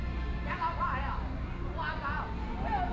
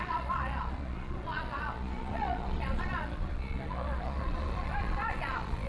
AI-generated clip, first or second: second